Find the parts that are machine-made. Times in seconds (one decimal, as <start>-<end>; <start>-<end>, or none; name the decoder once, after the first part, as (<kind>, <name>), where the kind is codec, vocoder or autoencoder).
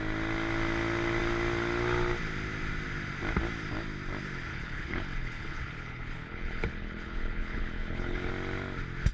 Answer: 4.5-8.3 (codec, HILCodec)